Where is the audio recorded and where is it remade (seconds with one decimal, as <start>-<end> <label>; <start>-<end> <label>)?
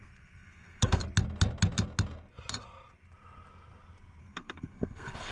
0.0-1.0 remade; 1.0-4.2 recorded; 4.2-5.3 remade